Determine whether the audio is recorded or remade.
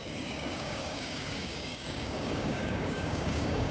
remade